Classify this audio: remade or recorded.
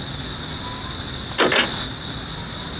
recorded